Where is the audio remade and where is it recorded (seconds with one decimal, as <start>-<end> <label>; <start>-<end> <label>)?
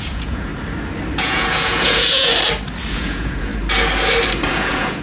0.0-0.5 remade; 0.5-1.2 recorded; 1.2-2.3 remade; 2.3-2.9 recorded; 2.9-3.5 remade; 3.5-4.5 recorded; 4.5-5.0 remade